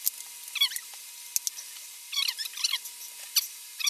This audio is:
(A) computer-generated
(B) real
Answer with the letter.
B